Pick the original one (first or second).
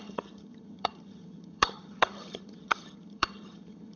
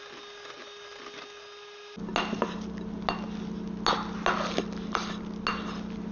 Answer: second